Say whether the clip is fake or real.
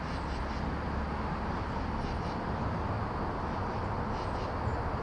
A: real